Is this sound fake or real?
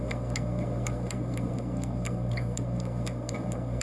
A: fake